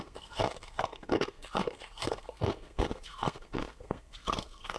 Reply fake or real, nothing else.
fake